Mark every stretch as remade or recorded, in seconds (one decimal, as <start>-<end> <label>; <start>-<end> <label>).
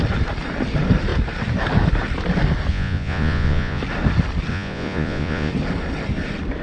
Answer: 0.0-2.7 recorded; 2.7-3.8 remade; 3.8-4.5 recorded; 4.5-5.5 remade; 5.5-6.6 recorded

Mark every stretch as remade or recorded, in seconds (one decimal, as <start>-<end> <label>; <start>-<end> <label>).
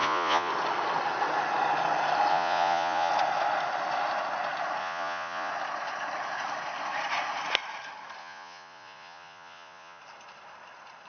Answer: 0.0-0.5 remade; 0.5-2.3 recorded; 2.3-3.1 remade; 3.1-4.8 recorded; 4.8-5.5 remade; 5.5-8.2 recorded; 8.2-10.0 remade; 10.0-11.1 recorded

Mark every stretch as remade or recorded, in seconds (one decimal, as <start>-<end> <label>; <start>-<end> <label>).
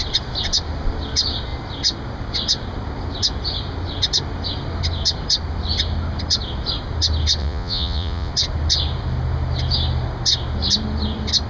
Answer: 0.0-7.4 recorded; 7.4-8.3 remade; 8.3-11.5 recorded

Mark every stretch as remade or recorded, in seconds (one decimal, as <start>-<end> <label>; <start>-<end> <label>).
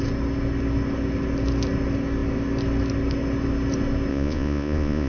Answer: 0.0-4.1 recorded; 4.1-5.1 remade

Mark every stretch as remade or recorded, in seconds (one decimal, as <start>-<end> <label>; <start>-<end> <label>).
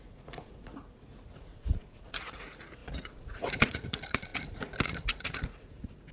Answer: 0.0-6.1 remade